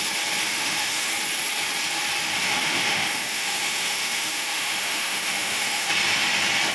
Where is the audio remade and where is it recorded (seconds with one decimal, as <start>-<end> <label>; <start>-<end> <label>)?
0.0-0.4 recorded; 0.4-1.1 remade; 1.1-2.4 recorded; 2.4-5.9 remade; 5.9-6.7 recorded